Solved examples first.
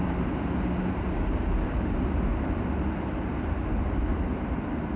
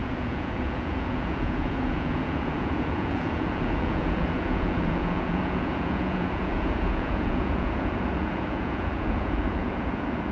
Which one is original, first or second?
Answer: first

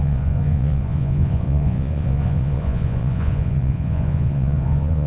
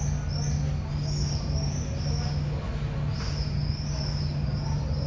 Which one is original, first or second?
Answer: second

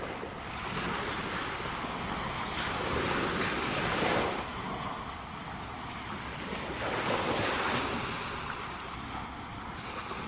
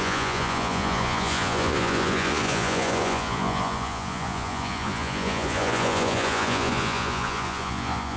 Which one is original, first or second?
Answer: first